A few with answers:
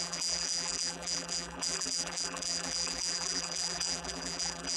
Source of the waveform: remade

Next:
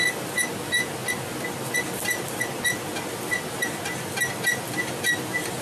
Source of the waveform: recorded